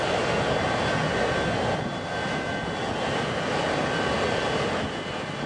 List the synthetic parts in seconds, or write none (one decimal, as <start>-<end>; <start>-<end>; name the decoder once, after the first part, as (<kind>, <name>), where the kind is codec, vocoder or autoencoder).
none